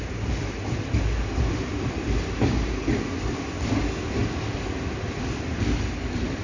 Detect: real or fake real